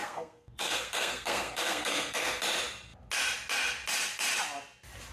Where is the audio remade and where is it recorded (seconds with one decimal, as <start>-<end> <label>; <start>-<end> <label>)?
0.0-2.4 remade; 2.4-5.1 recorded